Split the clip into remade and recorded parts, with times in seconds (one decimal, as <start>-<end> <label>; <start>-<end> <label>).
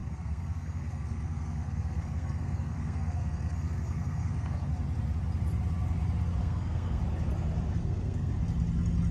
0.0-4.7 remade; 4.7-6.4 recorded; 6.4-7.0 remade; 7.0-7.8 recorded; 7.8-8.3 remade; 8.3-9.1 recorded